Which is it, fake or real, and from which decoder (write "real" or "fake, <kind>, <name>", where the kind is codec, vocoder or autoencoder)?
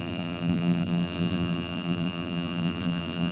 fake, vocoder, BigVGAN v2